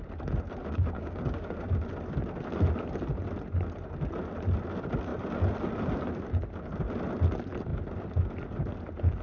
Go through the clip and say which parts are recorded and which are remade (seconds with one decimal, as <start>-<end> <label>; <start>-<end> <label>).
0.0-0.6 recorded; 0.6-1.7 remade; 1.7-9.2 recorded